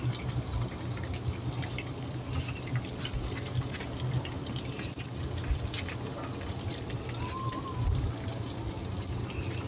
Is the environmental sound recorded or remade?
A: recorded